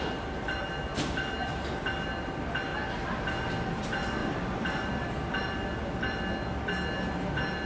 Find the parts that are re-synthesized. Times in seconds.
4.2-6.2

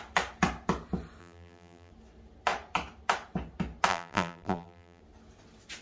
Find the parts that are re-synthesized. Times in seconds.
1.2-1.9; 3.9-5.0

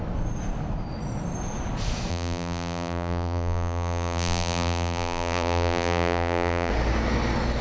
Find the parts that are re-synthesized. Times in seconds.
2.1-6.7

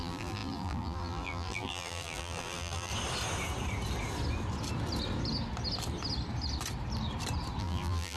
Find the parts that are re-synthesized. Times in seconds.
0.0-2.9; 7.6-8.2

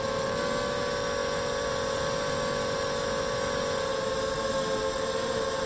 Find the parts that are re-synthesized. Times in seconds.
3.9-4.4

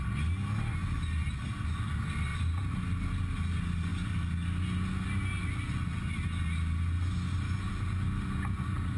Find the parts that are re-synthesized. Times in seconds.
2.3-2.8

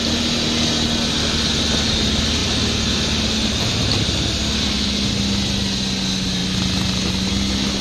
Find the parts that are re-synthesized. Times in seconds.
2.4-4.4